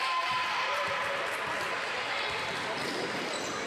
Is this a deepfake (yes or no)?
yes